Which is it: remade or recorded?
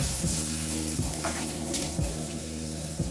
remade